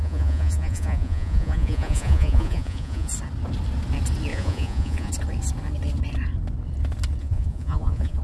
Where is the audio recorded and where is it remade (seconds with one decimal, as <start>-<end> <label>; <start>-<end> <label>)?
0.0-3.1 remade; 3.1-4.3 recorded; 4.3-5.1 remade; 5.1-7.2 recorded; 7.2-8.2 remade